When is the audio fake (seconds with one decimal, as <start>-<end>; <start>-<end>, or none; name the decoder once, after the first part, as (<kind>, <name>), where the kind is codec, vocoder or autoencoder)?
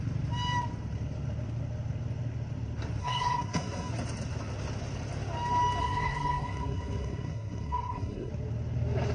3.0-3.9 (codec, SNAC); 5.8-8.3